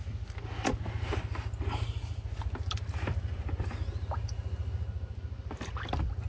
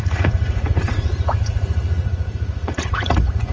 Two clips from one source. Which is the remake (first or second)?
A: second